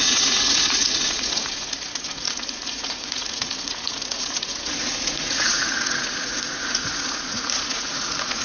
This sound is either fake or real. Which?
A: fake